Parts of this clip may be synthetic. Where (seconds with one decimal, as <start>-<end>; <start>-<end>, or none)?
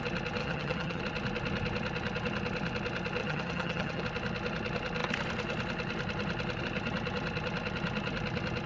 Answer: 0.4-1.0; 3.2-4.0